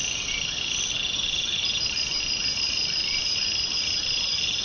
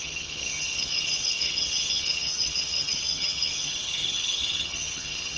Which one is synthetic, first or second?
second